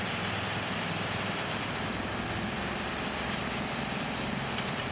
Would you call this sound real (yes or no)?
no